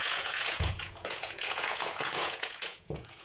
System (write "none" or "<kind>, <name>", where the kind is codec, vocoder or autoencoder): vocoder, Vocos